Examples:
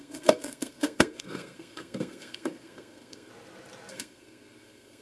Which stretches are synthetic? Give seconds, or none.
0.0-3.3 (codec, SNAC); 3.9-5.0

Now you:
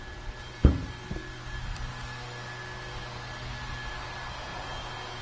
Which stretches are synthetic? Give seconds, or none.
4.5-5.2 (vocoder, Vocos)

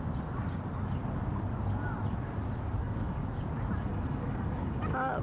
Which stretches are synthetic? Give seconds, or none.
2.8-3.4 (codec, DAC); 3.9-4.7

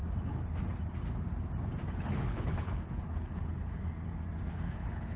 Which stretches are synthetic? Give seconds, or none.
2.0-3.8 (codec, HILCodec); 4.5-5.2

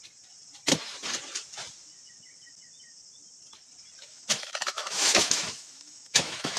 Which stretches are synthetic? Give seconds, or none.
4.0-6.6 (autoencoder, DAC-VAE)

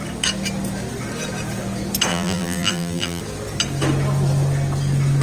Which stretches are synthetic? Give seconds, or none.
2.1-3.2 (vocoder, BigVGAN v2)

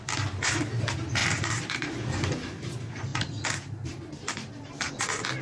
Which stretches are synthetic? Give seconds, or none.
1.2-2.0 (vocoder, BigVGAN v2); 3.1-4.9

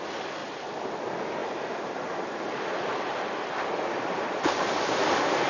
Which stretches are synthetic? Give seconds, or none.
0.4-0.9 (vocoder, BigVGAN v2); 1.4-3.6